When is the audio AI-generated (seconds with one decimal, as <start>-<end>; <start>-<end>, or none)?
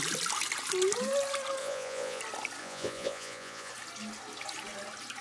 1.6-2.2; 2.6-3.7